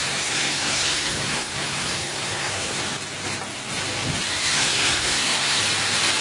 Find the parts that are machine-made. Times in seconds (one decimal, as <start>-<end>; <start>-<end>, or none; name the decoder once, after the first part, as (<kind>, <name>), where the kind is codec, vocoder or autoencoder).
0.0-2.8 (codec, SNAC); 4.3-5.6